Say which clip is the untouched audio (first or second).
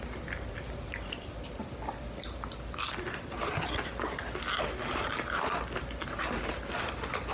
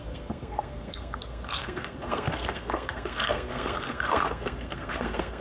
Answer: first